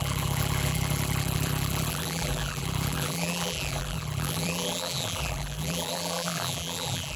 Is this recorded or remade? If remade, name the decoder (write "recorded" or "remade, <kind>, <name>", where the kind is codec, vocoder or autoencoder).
remade, vocoder, BigVGAN v2